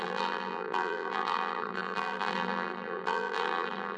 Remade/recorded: remade